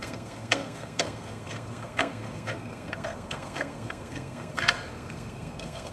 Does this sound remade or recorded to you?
remade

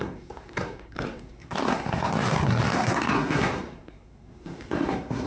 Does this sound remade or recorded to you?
remade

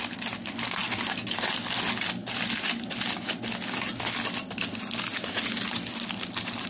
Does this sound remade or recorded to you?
recorded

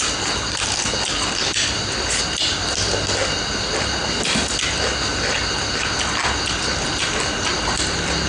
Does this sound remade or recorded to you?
recorded